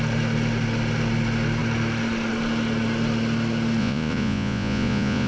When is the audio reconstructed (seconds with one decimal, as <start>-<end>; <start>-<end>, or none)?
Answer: 3.8-5.3